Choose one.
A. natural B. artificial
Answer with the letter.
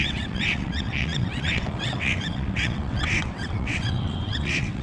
B